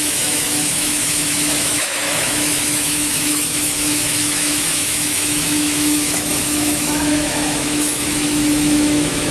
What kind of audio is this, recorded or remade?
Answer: remade